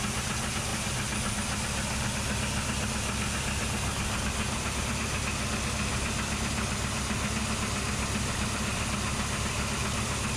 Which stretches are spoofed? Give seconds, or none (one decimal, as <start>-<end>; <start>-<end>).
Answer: none